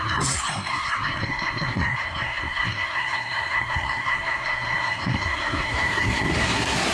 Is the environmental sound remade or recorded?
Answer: remade